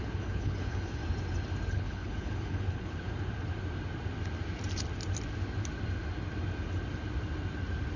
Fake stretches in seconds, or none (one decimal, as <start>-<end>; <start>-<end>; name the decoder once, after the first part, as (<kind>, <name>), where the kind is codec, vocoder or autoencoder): 0.0-1.0 (codec, HILCodec); 1.7-3.1